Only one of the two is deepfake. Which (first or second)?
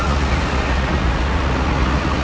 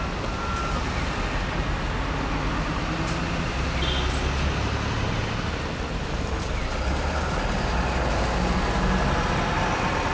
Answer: first